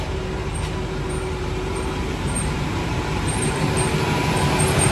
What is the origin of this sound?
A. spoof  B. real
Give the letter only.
A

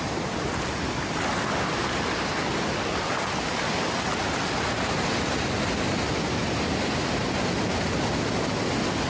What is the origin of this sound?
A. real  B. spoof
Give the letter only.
A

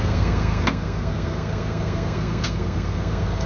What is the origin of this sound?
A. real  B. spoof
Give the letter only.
B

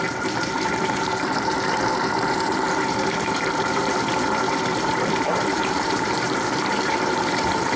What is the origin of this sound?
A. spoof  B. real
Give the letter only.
A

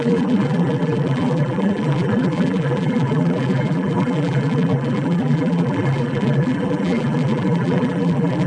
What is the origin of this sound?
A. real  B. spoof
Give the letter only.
B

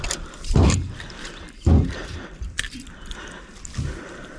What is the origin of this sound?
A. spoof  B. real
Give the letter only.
A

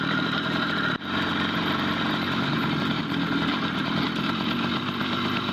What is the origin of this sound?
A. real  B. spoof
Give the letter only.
B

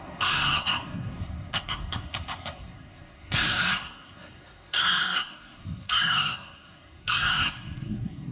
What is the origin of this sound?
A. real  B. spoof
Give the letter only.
B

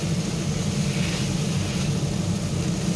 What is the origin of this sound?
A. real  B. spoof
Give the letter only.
A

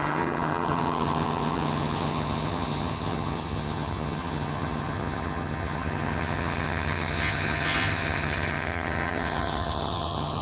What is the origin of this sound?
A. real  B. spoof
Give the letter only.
B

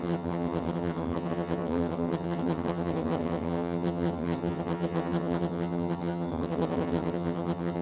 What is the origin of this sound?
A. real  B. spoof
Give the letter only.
B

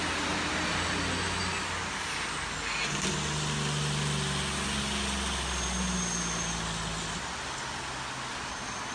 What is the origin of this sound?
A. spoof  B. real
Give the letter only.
B